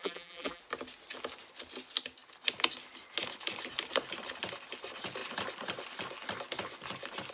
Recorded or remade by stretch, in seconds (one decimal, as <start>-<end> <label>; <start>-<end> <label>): 0.0-0.6 remade; 0.6-7.3 recorded